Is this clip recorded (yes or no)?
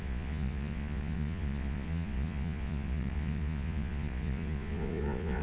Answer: no